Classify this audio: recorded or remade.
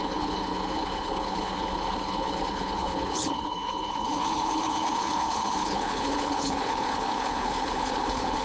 remade